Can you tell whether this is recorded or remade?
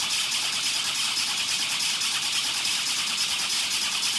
recorded